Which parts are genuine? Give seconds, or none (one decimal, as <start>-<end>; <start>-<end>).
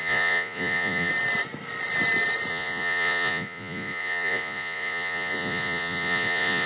1.1-2.5